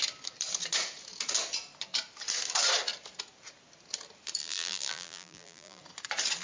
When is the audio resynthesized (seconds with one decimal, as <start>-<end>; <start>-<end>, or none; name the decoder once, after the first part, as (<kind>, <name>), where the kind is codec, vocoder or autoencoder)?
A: 4.4-5.8 (vocoder, BigVGAN v2)

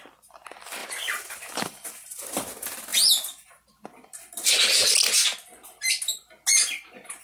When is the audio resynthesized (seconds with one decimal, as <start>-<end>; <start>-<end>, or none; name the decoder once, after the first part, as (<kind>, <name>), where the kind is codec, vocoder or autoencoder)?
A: 0.8-2.5 (vocoder, BigVGAN v2)

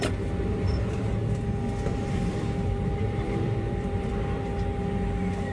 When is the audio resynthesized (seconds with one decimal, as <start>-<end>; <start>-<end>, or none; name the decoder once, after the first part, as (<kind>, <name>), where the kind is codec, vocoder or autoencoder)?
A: 1.9-4.1 (vocoder, BigVGAN v2)